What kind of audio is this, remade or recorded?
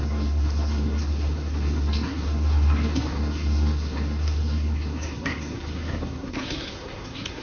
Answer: remade